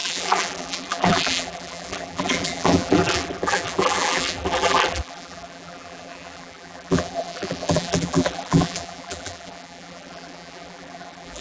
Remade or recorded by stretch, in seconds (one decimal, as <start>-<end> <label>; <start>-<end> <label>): 0.0-11.4 remade